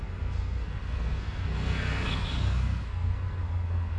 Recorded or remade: remade